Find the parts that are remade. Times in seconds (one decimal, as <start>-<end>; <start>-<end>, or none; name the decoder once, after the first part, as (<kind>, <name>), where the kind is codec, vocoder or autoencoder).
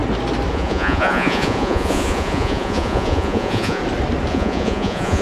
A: 0.5-3.8 (vocoder, Vocos); 4.3-5.2